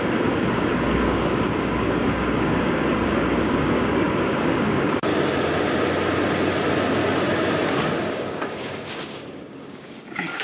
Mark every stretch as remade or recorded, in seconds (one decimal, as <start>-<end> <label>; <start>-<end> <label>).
0.0-5.1 remade; 5.1-8.1 recorded; 8.1-10.4 remade